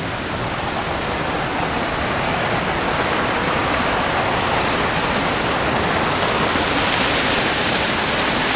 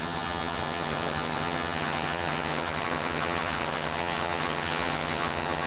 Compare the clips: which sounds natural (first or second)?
first